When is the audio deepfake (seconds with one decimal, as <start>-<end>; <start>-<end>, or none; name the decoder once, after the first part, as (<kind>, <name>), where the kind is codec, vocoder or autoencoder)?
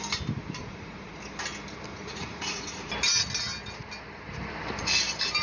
0.6-1.2 (vocoder, Vocos); 1.9-2.9